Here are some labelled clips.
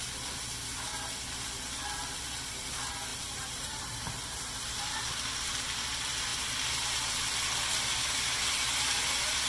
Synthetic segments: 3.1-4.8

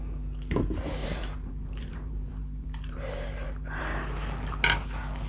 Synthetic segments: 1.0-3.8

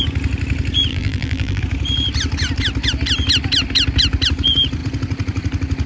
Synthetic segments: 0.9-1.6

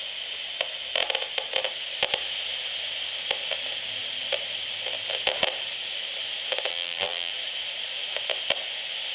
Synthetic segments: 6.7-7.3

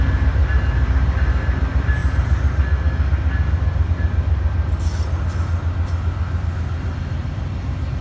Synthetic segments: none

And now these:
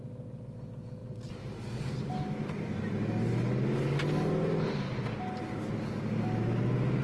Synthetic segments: 1.0-1.6